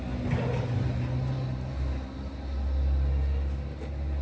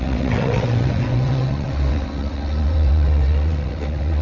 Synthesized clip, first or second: second